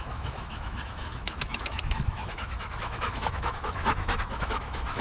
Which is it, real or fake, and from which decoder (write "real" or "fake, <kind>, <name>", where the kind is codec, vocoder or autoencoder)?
fake, autoencoder, DAC-VAE